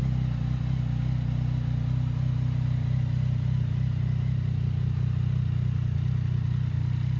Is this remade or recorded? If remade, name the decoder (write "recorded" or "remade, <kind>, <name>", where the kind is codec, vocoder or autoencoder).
recorded